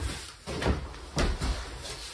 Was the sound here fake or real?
real